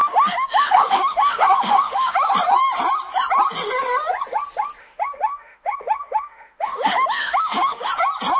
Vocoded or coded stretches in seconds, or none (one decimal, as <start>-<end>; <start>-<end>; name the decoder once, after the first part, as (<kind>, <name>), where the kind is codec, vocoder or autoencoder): 0.0-2.3 (autoencoder, DAC-VAE); 4.8-7.9